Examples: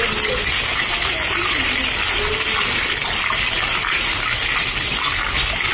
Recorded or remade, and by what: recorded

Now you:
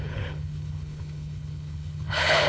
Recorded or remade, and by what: remade, codec, HILCodec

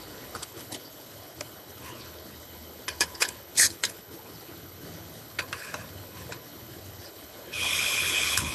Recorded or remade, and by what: remade, codec, HILCodec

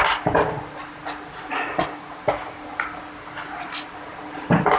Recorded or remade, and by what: recorded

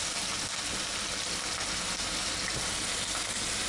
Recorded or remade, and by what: recorded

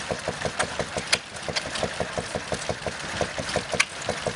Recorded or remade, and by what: recorded